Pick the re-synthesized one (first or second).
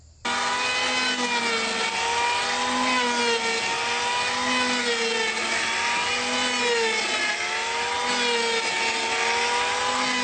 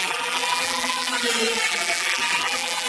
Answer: second